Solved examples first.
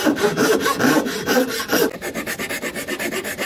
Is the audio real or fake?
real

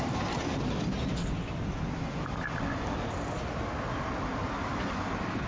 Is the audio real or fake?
real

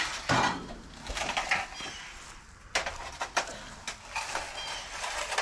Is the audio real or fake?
real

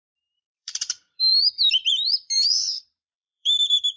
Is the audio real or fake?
fake